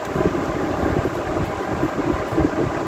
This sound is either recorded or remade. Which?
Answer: recorded